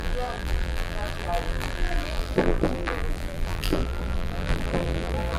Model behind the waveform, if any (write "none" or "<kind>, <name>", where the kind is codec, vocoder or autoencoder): vocoder, BigVGAN v2